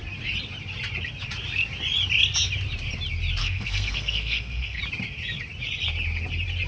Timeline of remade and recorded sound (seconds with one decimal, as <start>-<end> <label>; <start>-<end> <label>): 0.0-3.4 recorded; 3.4-4.8 remade; 4.8-6.7 recorded